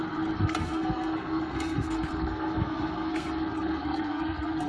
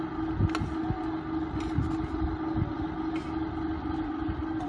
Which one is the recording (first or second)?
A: second